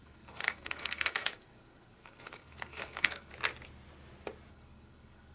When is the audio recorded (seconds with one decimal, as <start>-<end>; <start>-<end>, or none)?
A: 3.3-4.5